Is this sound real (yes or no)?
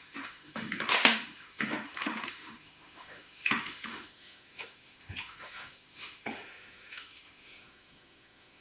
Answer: no